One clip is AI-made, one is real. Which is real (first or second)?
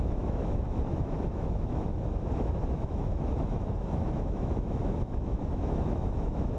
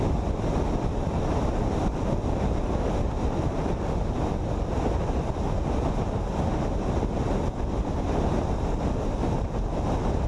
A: second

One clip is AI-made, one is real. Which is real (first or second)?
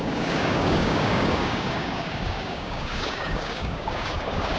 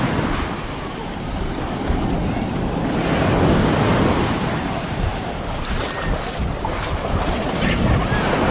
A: second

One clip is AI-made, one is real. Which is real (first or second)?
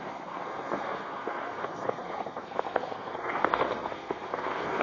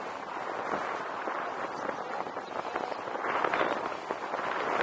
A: second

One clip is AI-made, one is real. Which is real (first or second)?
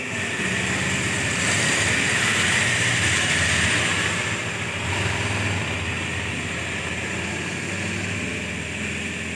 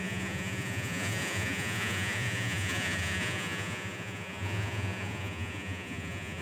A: first